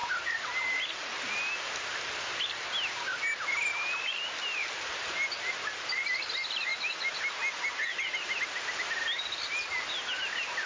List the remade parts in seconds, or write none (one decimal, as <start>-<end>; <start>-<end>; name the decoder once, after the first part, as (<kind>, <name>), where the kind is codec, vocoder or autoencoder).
3.7-5.3 (vocoder, BigVGAN v2)